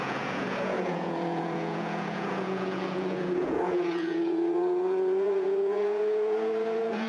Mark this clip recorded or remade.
remade